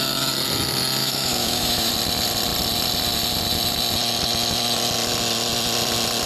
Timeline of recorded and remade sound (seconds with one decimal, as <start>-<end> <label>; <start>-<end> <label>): 0.0-1.0 recorded; 1.0-1.9 remade; 1.9-6.3 recorded

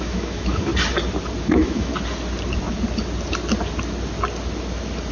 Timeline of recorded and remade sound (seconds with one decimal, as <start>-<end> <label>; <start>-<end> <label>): 0.0-0.7 remade; 0.7-1.4 recorded; 1.4-1.9 remade; 1.9-5.1 recorded

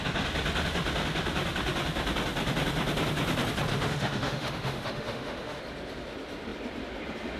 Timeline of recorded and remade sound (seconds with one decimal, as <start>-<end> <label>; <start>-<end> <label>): 0.0-3.7 recorded; 3.7-5.6 remade; 5.6-7.4 recorded

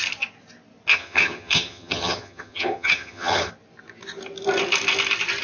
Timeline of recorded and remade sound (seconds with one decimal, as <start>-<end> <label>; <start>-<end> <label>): 0.0-0.9 recorded; 0.9-3.5 remade; 3.5-5.4 recorded

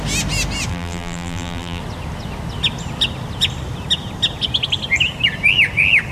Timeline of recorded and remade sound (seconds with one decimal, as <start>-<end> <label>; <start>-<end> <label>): 0.0-0.7 recorded; 0.7-1.8 remade; 1.8-6.1 recorded

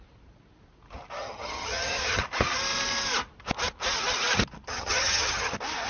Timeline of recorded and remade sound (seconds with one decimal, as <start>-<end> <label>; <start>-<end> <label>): 0.0-1.2 recorded; 1.2-2.2 remade; 2.2-4.7 recorded; 4.7-5.5 remade; 5.5-5.9 recorded

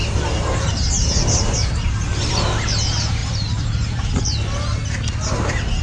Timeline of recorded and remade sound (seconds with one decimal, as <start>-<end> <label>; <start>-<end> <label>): 0.0-2.3 remade; 2.3-3.2 recorded; 3.2-4.2 remade; 4.2-5.8 recorded

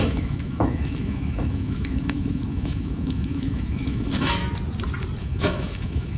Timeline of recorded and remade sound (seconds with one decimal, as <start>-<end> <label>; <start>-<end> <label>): 0.0-4.4 remade; 4.4-5.2 recorded; 5.2-6.2 remade